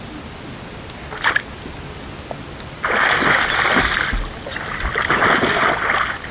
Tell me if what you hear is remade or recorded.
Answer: recorded